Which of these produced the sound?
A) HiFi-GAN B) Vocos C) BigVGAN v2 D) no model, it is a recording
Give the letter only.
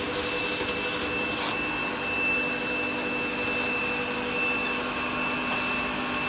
D